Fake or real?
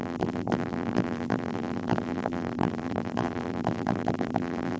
fake